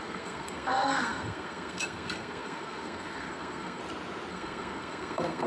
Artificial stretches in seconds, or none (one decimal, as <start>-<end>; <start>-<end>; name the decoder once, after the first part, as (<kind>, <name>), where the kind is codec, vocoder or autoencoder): 0.0-3.8 (codec, SNAC); 4.3-5.5